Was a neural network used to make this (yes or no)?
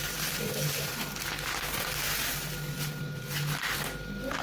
no